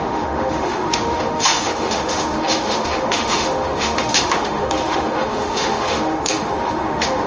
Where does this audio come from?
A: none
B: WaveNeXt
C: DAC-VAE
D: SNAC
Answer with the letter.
C